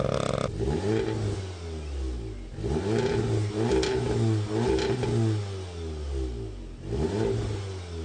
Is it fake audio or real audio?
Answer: real